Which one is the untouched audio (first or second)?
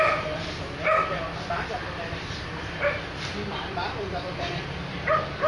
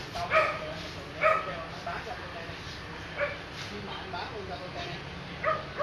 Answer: second